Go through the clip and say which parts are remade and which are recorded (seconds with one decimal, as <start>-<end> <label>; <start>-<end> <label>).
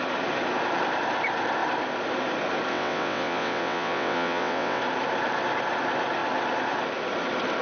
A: 0.0-2.7 recorded; 2.7-4.8 remade; 4.8-7.6 recorded